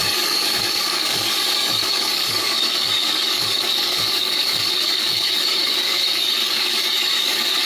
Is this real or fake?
fake